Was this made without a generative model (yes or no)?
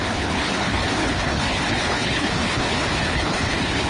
no